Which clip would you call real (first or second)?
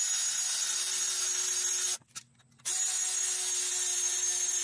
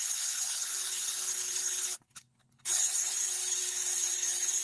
first